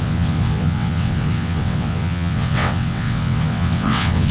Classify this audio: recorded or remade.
remade